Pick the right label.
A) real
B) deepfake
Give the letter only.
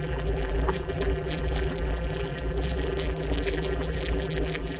B